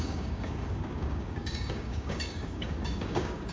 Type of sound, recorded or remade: remade